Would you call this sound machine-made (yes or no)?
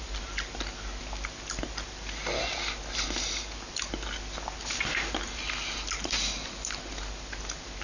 no